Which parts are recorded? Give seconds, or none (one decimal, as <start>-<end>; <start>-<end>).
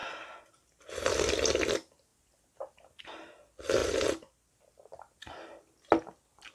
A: 0.0-6.5